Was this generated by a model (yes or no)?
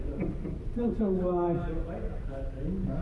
no